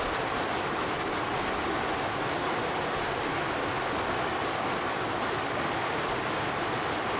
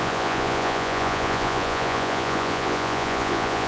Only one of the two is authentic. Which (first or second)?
first